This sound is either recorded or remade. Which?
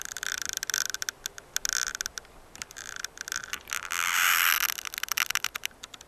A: recorded